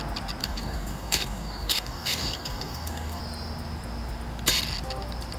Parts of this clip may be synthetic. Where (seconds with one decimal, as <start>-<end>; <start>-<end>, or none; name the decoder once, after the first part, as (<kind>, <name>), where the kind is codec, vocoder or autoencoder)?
0.4-3.2 (codec, DAC)